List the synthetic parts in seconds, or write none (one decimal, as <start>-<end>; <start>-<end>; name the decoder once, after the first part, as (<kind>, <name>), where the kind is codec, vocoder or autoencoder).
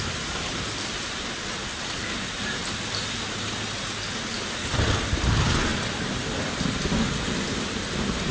none